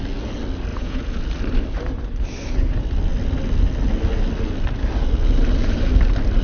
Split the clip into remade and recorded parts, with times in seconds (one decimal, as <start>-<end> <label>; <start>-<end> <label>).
0.0-0.7 recorded; 0.7-1.2 remade; 1.2-6.4 recorded